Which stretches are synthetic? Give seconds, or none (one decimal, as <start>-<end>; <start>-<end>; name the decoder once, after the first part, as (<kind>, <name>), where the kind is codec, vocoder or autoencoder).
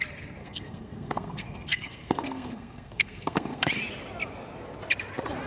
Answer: 0.4-3.7 (codec, SNAC)